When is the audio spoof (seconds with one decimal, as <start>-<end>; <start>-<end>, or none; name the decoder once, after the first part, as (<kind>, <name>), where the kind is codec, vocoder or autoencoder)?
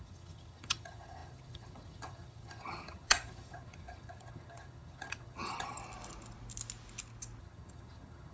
0.0-5.8 (vocoder, HiFi-GAN); 7.4-8.3